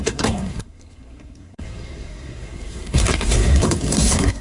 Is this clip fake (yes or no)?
yes